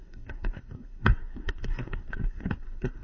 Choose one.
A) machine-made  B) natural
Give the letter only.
A